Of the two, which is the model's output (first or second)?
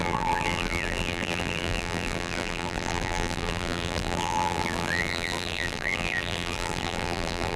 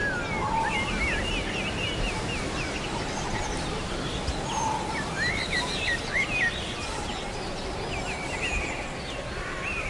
first